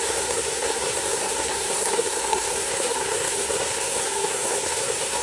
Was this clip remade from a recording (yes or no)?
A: yes